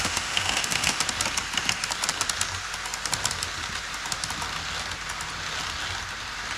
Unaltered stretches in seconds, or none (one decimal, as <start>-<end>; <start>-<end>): 1.0-6.6